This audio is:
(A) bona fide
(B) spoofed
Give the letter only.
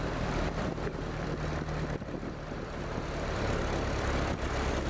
B